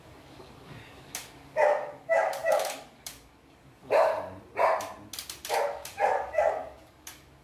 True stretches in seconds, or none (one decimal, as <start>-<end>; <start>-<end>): 4.1-5.5